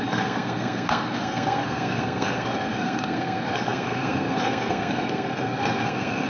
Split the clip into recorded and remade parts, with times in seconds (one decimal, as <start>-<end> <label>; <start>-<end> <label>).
0.0-6.3 remade